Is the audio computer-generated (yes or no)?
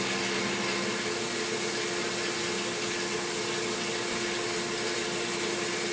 no